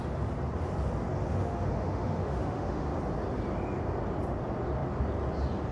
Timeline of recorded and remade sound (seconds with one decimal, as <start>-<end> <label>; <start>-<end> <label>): 0.0-1.3 recorded; 1.3-3.0 remade; 3.0-5.7 recorded